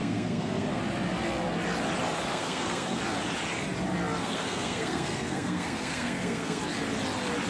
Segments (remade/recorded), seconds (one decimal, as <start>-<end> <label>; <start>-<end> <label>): 0.0-0.8 remade; 0.8-2.3 recorded; 2.3-3.0 remade; 3.0-4.2 recorded; 4.2-6.6 remade; 6.6-7.5 recorded